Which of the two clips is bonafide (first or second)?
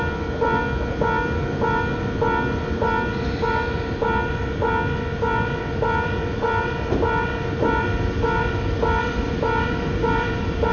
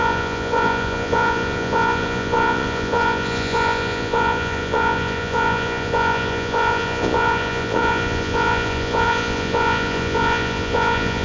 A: first